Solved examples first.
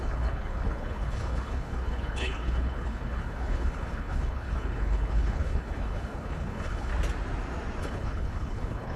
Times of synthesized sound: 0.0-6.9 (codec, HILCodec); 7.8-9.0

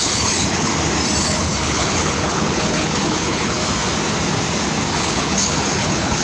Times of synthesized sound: 0.0-0.7 (codec, HILCodec); 1.2-3.6; 4.9-6.2

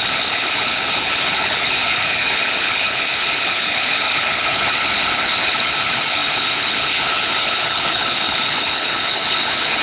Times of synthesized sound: 0.0-9.8 (codec, HILCodec)

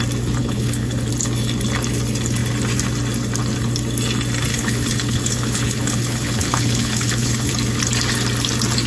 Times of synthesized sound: 0.4-1.1 (codec, HILCodec); 4.5-7.5

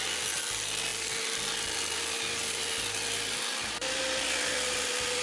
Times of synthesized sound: none

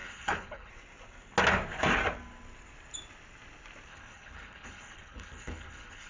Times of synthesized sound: 0.0-0.7 (codec, HILCodec); 3.9-6.1

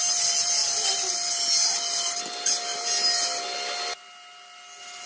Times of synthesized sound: none